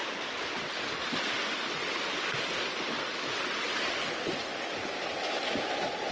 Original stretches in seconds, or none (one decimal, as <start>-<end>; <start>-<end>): 0.0-6.1